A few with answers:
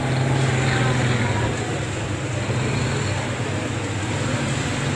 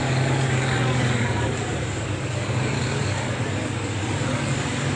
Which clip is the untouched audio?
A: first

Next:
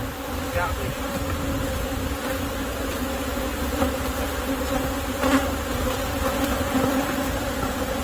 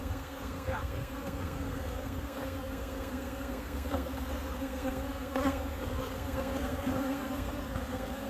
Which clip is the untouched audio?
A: first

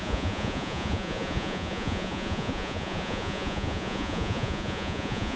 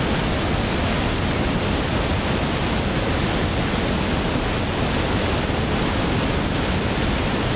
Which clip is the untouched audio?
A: second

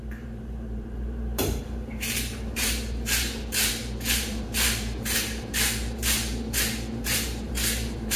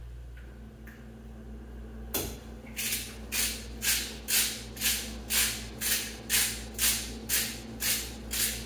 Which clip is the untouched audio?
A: second